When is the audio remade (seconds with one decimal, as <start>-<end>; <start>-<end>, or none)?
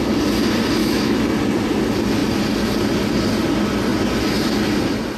0.8-1.3